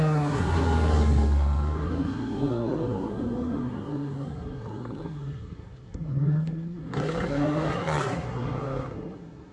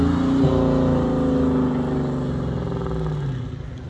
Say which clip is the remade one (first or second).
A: first